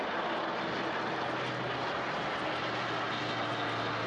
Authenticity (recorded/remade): recorded